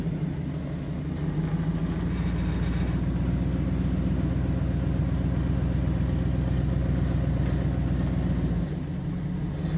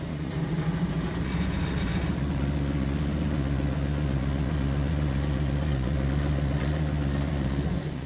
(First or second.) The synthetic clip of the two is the second